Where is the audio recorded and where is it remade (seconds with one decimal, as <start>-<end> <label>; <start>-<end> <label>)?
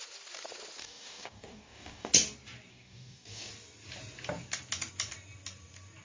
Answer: 0.0-0.8 recorded; 0.8-2.1 remade; 2.1-2.7 recorded; 2.7-3.5 remade; 3.5-6.0 recorded